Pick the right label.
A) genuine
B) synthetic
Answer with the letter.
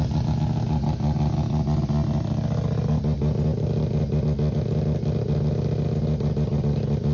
A